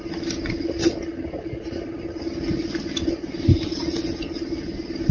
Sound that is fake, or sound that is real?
real